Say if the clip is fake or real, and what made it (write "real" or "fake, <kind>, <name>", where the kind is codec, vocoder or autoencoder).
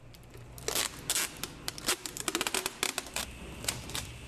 real